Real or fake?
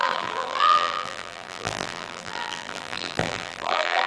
fake